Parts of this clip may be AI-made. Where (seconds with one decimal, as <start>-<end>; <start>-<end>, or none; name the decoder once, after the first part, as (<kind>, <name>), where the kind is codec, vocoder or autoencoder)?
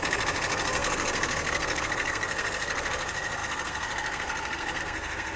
0.0-5.4 (codec, SNAC)